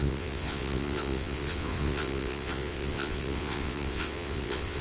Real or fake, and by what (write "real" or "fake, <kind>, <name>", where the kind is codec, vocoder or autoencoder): fake, vocoder, WaveNeXt